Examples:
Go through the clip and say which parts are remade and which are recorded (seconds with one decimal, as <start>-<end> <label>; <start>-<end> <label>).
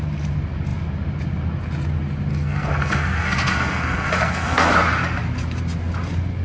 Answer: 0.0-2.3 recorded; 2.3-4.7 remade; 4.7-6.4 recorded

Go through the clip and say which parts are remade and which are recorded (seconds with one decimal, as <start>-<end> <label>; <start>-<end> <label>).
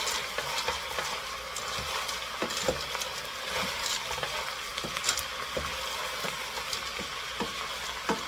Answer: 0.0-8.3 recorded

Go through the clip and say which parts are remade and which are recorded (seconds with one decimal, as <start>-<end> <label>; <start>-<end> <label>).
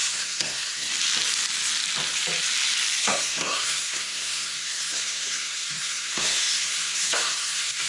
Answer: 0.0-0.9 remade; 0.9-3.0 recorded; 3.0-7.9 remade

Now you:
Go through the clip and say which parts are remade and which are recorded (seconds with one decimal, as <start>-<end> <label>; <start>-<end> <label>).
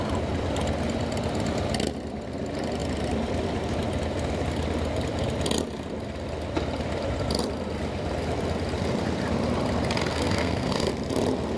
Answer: 0.0-10.1 recorded; 10.1-10.9 remade; 10.9-11.6 recorded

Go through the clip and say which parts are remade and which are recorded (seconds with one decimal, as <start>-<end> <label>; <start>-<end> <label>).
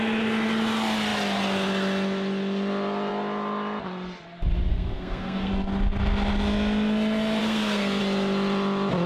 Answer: 0.0-4.7 recorded; 4.7-5.5 remade; 5.5-7.4 recorded; 7.4-8.0 remade; 8.0-9.1 recorded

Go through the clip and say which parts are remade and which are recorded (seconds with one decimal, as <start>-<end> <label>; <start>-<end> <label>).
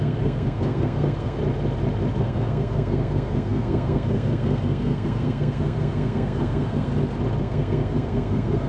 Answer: 0.0-1.4 remade; 1.4-2.2 recorded; 2.2-6.9 remade; 6.9-7.4 recorded; 7.4-8.7 remade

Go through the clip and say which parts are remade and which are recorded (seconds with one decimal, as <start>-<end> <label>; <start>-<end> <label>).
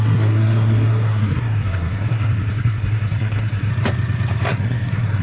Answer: 0.0-3.7 remade; 3.7-4.5 recorded; 4.5-5.2 remade